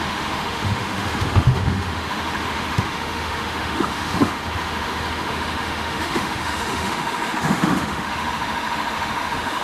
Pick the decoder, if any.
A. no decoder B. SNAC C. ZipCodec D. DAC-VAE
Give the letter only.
D